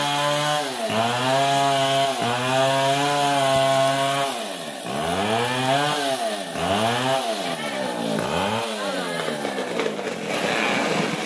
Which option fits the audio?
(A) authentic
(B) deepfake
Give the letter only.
A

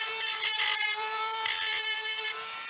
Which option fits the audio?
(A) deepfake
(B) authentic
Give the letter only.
A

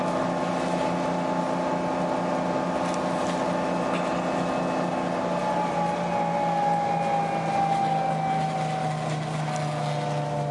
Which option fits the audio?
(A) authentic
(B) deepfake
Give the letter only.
A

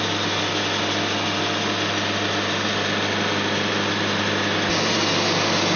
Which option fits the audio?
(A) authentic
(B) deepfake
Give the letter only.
A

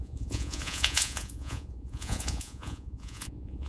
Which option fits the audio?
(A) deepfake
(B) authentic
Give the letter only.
A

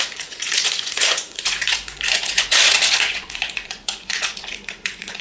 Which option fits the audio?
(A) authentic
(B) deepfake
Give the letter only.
B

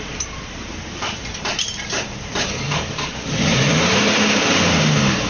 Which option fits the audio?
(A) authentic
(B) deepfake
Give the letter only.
B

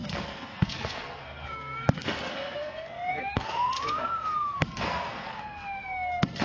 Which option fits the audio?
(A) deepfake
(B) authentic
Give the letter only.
A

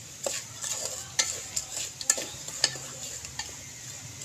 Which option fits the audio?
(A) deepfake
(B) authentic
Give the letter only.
B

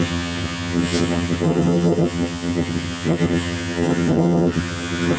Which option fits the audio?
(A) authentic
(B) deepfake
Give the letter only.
B